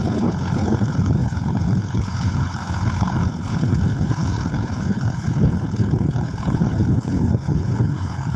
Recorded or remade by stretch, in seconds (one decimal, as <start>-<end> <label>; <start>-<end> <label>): 0.0-8.4 remade